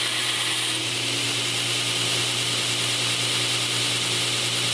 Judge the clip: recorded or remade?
recorded